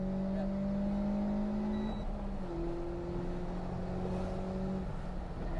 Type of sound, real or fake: real